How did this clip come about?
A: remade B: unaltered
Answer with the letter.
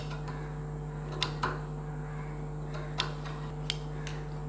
B